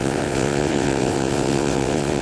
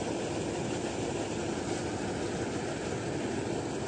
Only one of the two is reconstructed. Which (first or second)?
first